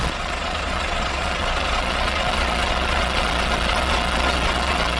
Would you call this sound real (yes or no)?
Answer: no